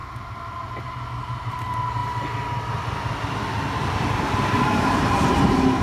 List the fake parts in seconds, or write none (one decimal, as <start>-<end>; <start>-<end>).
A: 0.0-2.0; 3.5-5.8